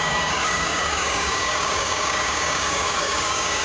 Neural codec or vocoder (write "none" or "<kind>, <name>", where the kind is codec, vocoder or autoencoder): codec, DAC